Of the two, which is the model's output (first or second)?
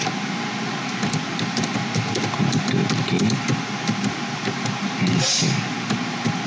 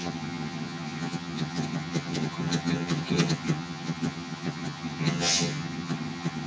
second